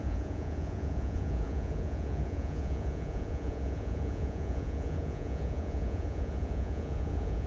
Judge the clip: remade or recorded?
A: remade